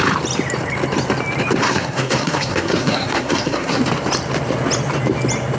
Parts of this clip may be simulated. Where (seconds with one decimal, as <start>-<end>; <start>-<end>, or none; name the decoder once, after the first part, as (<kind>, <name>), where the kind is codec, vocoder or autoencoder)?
1.6-3.8 (codec, SNAC)